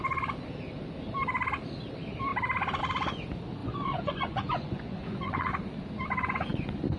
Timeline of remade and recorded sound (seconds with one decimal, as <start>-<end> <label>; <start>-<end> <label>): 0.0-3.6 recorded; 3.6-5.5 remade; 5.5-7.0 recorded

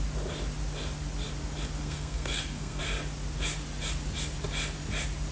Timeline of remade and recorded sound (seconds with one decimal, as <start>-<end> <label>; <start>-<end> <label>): 0.0-1.8 recorded; 1.8-2.8 remade; 2.8-5.3 recorded

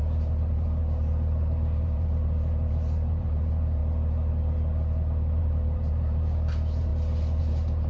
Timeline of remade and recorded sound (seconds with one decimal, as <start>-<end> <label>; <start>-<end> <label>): 0.0-3.8 remade; 3.8-5.4 recorded; 5.4-6.9 remade; 6.9-7.4 recorded; 7.4-7.9 remade